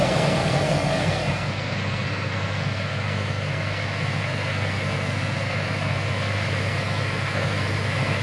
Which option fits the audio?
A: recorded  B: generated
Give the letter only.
B